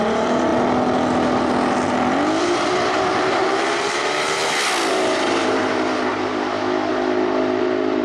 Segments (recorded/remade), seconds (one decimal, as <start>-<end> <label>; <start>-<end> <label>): 0.0-0.5 remade; 0.5-2.4 recorded; 2.4-4.4 remade; 4.4-4.9 recorded; 4.9-6.1 remade; 6.1-6.9 recorded; 6.9-8.0 remade